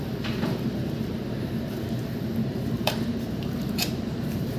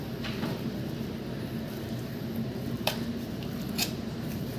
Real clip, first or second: second